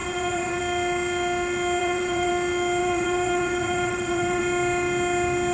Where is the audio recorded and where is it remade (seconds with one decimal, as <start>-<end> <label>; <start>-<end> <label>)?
0.0-0.6 remade; 0.6-1.8 recorded; 1.8-2.3 remade; 2.3-2.8 recorded; 2.8-4.4 remade; 4.4-5.5 recorded